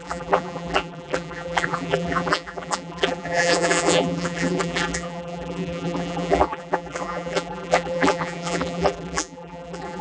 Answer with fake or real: fake